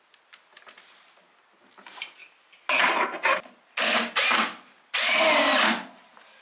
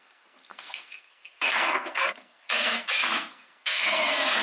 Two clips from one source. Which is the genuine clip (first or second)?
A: first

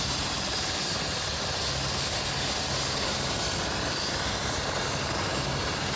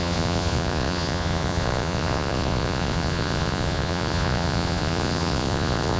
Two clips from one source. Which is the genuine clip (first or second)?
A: first